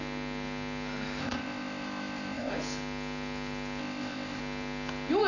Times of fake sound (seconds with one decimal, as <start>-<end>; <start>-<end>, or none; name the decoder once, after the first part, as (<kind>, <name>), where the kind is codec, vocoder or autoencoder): 1.2-2.5 (codec, ZipCodec); 3.8-4.4